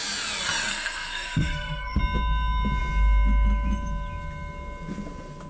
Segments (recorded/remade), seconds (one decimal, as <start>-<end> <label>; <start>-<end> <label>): 0.0-0.7 recorded; 0.7-2.0 remade; 2.0-5.5 recorded